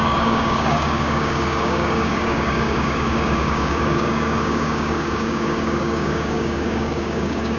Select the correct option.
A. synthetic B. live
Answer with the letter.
A